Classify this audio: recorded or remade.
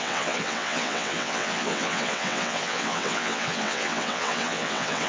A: remade